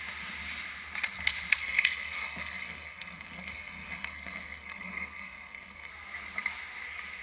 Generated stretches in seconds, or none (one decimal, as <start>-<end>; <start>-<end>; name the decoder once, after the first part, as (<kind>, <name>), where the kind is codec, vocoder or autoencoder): 1.6-5.9 (codec, SNAC)